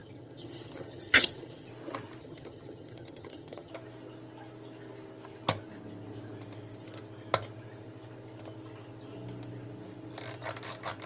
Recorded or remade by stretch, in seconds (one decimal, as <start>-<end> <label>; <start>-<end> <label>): 0.0-1.7 remade; 1.7-2.2 recorded; 2.2-3.7 remade; 3.7-11.1 recorded